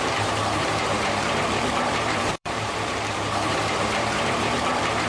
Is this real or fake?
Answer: fake